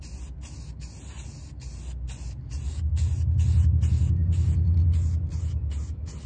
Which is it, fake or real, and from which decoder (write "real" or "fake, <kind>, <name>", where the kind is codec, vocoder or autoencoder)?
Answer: real